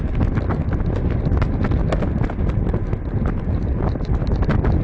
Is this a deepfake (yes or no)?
no